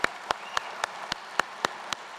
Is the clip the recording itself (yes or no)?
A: yes